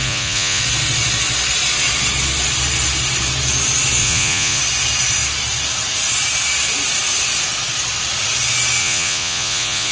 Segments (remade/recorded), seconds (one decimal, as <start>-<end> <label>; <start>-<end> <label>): 0.0-0.6 remade; 0.6-4.0 recorded; 4.0-4.6 remade; 4.6-8.8 recorded; 8.8-9.9 remade